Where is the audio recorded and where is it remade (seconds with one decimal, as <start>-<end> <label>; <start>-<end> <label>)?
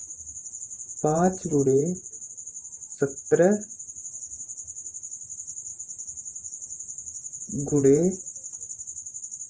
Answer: 0.0-2.3 remade; 2.3-3.7 recorded; 3.7-4.9 remade; 4.9-5.7 recorded; 5.7-8.2 remade; 8.2-9.5 recorded